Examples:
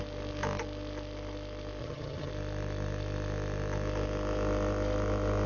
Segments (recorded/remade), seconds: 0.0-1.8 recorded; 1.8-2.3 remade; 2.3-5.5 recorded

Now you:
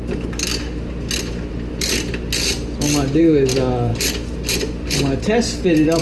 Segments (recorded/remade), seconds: 0.0-6.0 recorded

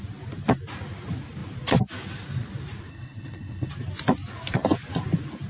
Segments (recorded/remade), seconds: 0.0-2.9 recorded; 2.9-3.7 remade; 3.7-5.5 recorded

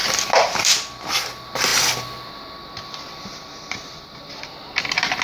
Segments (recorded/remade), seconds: 0.0-5.2 recorded

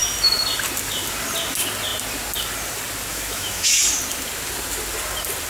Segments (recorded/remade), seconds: 0.0-3.1 recorded; 3.1-3.8 remade; 3.8-5.5 recorded

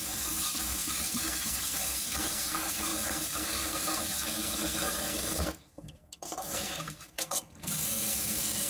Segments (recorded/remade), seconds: 0.0-8.7 remade

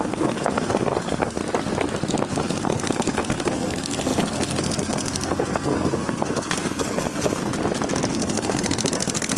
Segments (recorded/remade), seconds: 0.0-1.4 remade; 1.4-2.3 recorded; 2.3-7.4 remade; 7.4-8.1 recorded; 8.1-9.4 remade

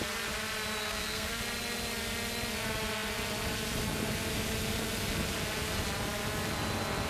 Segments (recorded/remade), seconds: 0.0-0.8 recorded; 0.8-1.4 remade; 1.4-7.1 recorded